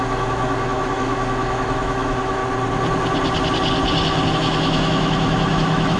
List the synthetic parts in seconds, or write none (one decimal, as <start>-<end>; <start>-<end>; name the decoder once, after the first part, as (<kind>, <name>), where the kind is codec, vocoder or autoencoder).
0.0-2.4 (autoencoder, DAC-VAE); 4.3-6.0